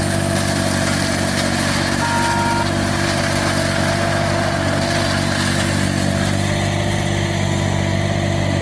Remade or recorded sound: recorded